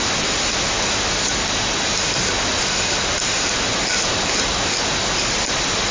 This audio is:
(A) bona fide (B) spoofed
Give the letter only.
A